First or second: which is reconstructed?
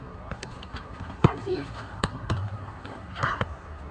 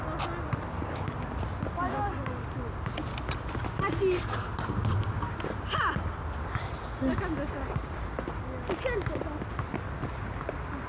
first